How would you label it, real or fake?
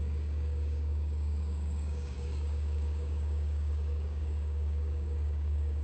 fake